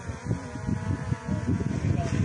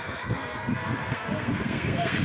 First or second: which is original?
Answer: first